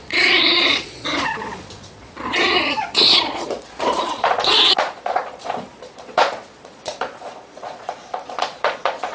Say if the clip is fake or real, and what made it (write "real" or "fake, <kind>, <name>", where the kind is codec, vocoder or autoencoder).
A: fake, vocoder, Vocos